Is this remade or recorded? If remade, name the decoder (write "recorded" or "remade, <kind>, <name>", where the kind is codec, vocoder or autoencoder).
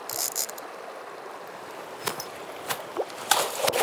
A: remade, vocoder, BigVGAN v2